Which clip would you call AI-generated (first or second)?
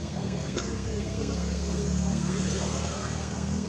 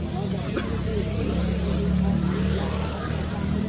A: first